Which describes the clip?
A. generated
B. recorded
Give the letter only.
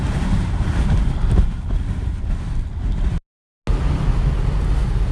B